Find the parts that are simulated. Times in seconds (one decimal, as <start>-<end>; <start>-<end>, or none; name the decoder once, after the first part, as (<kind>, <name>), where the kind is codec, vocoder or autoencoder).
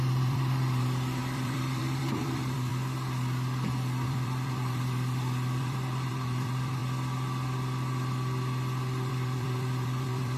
0.0-2.7 (vocoder, BigVGAN v2); 4.1-6.8; 9.1-10.4